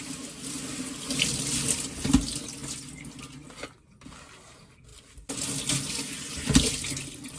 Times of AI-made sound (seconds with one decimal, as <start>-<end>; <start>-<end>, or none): none